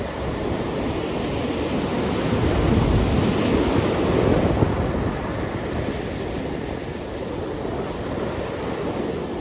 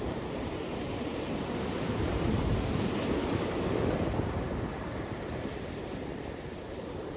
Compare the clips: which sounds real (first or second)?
first